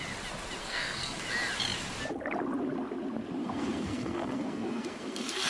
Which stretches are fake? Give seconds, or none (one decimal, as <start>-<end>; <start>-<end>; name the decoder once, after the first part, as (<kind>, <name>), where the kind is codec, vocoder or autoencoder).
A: 0.6-1.2 (codec, SNAC); 3.4-5.5